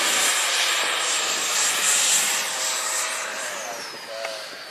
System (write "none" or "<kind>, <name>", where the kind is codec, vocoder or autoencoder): none